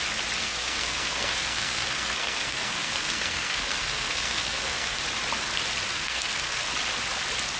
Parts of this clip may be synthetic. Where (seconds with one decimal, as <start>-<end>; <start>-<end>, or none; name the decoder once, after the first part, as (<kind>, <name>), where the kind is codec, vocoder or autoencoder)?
0.4-5.0 (codec, SNAC); 5.9-6.7